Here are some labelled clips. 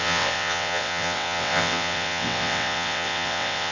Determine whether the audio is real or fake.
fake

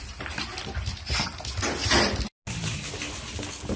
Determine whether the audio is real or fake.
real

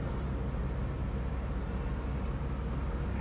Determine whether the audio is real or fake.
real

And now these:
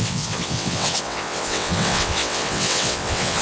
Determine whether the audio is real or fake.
fake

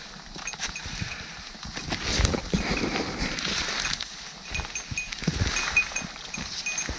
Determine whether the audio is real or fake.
real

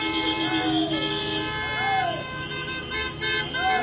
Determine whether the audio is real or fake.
real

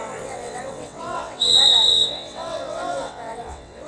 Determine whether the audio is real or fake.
fake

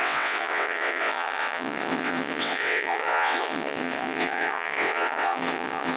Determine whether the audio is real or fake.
fake